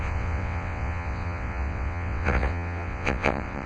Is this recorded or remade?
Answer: remade